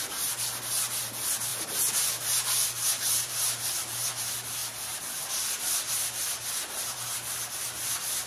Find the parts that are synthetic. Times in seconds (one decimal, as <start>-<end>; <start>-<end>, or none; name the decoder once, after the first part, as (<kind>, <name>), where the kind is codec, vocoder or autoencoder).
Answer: none